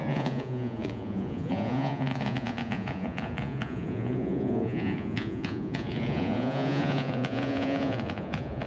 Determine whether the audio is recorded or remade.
remade